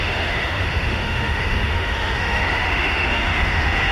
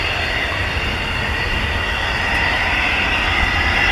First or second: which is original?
second